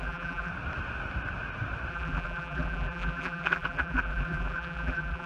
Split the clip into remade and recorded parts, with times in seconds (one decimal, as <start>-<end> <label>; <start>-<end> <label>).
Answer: 0.0-0.5 remade; 0.5-1.9 recorded; 1.9-5.3 remade